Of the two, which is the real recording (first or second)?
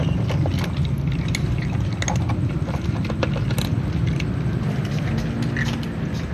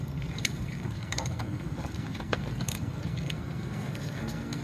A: first